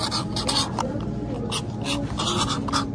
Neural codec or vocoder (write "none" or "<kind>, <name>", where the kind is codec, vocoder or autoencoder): none